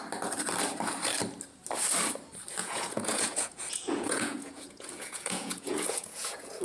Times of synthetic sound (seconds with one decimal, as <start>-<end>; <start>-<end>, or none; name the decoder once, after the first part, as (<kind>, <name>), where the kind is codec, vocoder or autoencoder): 2.6-6.6 (vocoder, Vocos)